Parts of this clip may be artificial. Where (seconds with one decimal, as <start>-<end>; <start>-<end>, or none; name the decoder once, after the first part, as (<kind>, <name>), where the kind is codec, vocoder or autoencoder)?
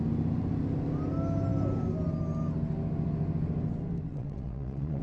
4.1-5.0 (vocoder, WaveNeXt)